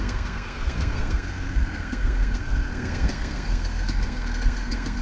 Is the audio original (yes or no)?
no